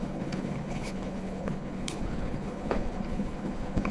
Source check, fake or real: fake